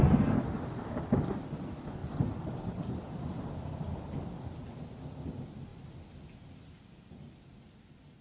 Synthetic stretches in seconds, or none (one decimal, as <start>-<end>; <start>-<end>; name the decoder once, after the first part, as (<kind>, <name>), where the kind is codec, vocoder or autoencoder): none